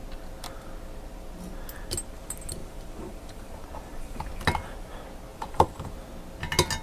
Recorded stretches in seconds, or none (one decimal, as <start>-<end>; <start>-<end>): 0.0-2.6; 4.3-5.3; 6.1-6.8